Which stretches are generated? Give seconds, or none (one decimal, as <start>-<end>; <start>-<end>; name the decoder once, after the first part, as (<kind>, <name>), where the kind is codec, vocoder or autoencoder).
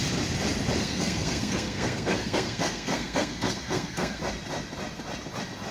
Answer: 0.8-4.2 (codec, SNAC)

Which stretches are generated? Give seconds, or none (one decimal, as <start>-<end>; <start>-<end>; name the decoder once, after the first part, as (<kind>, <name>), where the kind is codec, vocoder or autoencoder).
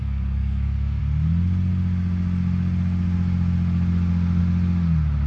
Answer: 0.0-1.0 (codec, SNAC)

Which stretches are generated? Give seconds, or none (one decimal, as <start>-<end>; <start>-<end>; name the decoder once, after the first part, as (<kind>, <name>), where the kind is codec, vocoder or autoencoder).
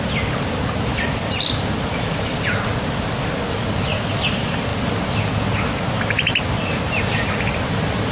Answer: none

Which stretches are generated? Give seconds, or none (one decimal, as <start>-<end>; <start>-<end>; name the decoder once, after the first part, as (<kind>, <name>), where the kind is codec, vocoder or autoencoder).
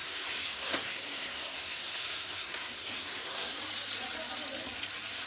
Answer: 0.0-3.6 (codec, SNAC)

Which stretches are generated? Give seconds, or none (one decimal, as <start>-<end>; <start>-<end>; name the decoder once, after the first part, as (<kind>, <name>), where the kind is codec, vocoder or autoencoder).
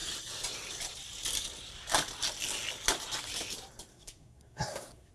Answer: 3.9-5.1 (codec, SNAC)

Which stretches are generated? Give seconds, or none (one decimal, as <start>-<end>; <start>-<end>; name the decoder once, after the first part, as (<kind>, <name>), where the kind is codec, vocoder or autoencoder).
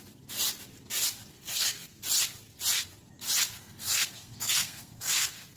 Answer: 1.3-2.0 (codec, SNAC); 3.6-5.6